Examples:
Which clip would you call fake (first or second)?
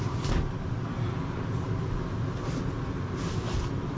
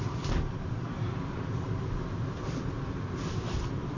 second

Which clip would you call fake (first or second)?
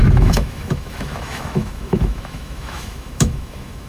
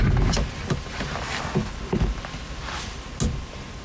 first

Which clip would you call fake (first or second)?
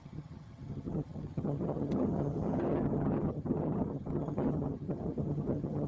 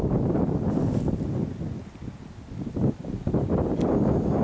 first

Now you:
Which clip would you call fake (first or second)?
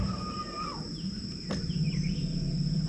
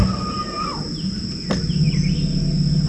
first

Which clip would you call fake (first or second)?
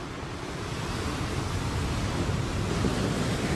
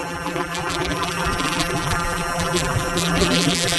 second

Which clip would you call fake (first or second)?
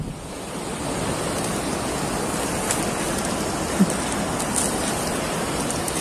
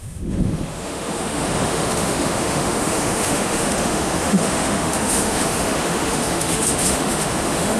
second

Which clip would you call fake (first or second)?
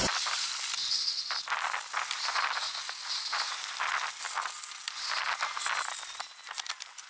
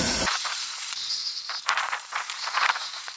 second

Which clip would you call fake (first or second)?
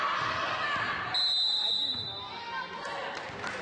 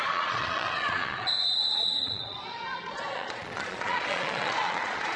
second